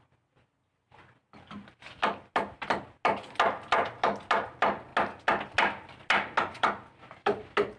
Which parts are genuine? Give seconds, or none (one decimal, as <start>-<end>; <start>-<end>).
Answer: 0.0-7.8